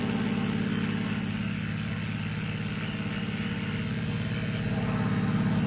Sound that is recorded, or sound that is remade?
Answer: recorded